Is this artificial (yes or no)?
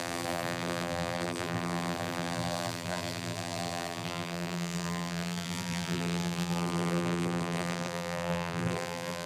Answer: yes